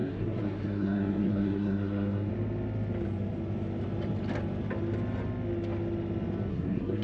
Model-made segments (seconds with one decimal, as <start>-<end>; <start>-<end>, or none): 0.0-2.3; 6.5-7.0